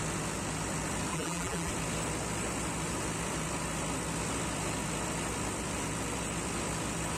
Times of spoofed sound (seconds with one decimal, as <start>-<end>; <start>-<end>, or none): 1.1-1.7